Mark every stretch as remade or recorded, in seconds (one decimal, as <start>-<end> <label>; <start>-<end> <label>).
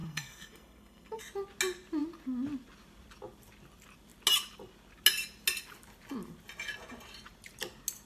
0.0-1.2 remade; 1.2-8.1 recorded